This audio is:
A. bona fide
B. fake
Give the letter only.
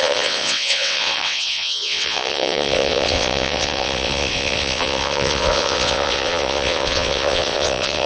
B